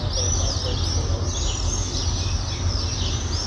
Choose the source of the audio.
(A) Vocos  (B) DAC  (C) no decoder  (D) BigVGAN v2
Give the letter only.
C